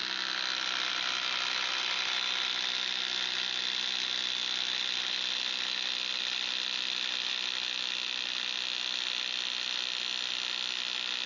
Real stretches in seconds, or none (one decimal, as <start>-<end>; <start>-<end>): 0.0-11.3